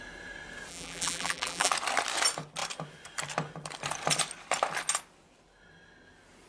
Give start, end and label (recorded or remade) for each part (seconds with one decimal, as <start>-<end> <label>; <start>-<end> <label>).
0.0-0.7 recorded; 0.7-1.7 remade; 1.7-6.5 recorded